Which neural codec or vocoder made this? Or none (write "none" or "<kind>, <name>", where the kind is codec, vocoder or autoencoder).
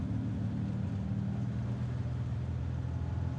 none